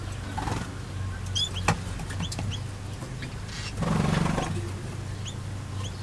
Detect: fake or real real